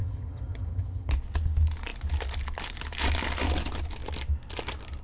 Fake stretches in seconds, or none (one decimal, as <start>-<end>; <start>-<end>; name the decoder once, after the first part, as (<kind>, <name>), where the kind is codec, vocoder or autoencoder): 0.0-1.1 (vocoder, HiFi-GAN)